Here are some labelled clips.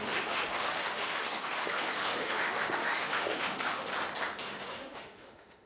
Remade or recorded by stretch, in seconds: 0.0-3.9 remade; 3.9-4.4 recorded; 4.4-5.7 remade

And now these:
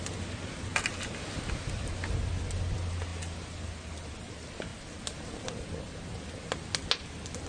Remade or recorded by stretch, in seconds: 0.0-7.5 recorded

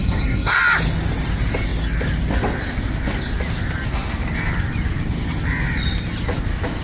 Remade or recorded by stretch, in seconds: 0.0-0.6 remade; 0.6-6.8 recorded

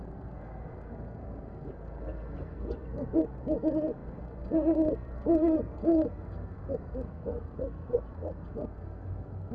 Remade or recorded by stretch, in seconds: 0.0-9.5 remade